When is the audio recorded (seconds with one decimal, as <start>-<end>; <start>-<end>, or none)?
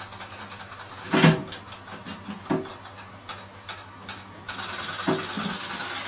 0.0-6.1